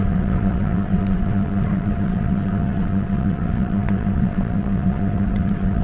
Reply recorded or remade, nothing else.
remade